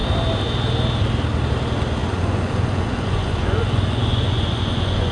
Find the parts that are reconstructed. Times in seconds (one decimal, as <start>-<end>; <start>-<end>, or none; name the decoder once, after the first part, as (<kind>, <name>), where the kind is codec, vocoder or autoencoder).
2.0-5.1 (vocoder, Vocos)